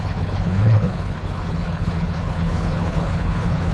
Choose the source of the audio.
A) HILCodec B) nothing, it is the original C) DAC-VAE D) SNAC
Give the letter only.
A